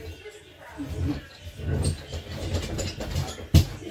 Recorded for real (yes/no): yes